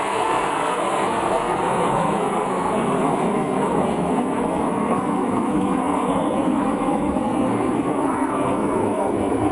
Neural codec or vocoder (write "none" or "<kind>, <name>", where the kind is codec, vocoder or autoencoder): codec, SNAC